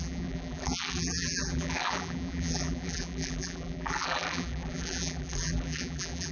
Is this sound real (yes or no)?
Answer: no